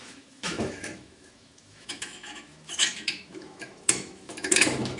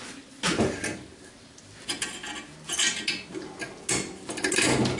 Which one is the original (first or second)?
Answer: second